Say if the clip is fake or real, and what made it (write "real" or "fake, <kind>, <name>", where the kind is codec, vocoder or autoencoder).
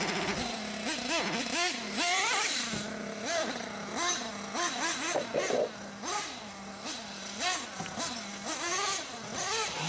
real